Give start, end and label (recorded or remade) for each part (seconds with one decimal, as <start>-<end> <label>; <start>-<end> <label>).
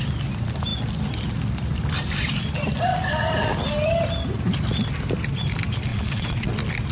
0.0-5.9 recorded; 5.9-6.5 remade; 6.5-6.9 recorded